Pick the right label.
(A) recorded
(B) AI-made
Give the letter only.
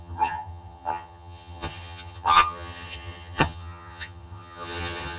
B